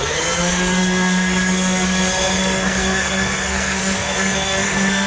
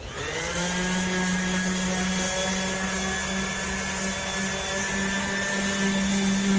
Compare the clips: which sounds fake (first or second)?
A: first